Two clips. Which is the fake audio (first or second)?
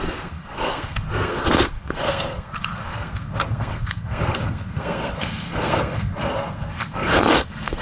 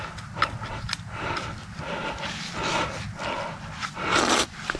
first